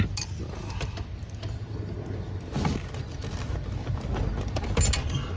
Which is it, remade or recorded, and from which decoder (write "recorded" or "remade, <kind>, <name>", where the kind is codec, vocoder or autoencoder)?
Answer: recorded